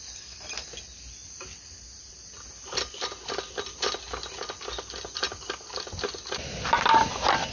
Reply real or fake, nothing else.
real